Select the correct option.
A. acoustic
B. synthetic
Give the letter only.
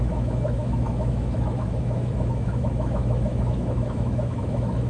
B